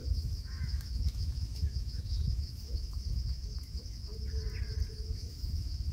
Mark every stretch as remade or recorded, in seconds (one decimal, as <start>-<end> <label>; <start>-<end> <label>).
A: 0.0-4.1 remade; 4.1-4.9 recorded; 4.9-5.9 remade